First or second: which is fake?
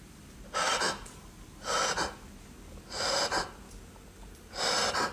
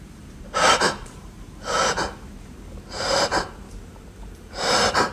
second